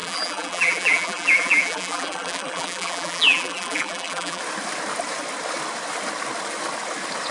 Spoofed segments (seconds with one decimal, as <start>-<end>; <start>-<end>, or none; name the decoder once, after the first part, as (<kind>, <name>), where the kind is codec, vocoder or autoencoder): 0.0-4.4 (vocoder, BigVGAN v2)